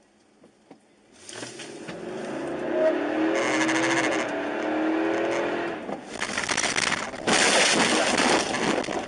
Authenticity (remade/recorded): recorded